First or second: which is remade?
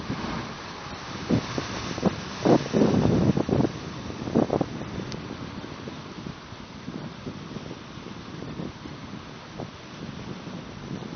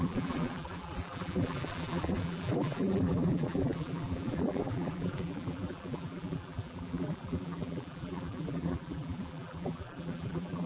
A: second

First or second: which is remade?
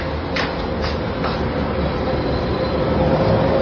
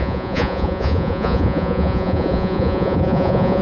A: second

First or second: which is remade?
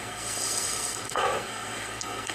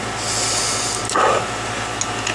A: first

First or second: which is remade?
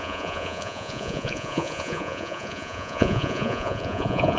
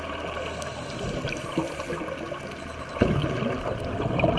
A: first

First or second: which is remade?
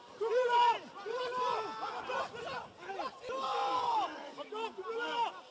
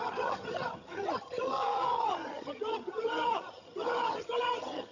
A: second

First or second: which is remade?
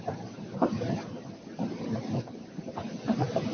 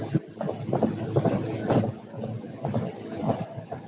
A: first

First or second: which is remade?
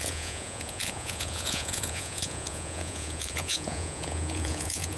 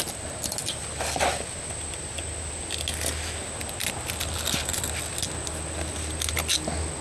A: first